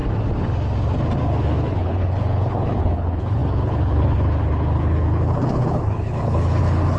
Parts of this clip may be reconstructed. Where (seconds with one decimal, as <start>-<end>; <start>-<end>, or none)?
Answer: 1.4-7.0